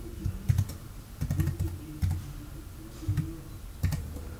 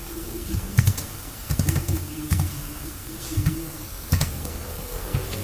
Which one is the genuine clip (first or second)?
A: first